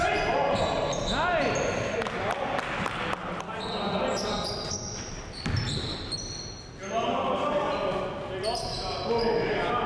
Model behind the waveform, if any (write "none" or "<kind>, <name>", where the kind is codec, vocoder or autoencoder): none